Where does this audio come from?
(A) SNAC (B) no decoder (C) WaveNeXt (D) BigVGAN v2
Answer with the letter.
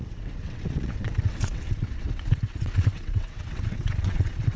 C